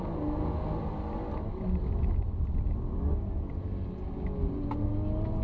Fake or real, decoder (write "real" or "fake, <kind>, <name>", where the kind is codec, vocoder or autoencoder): real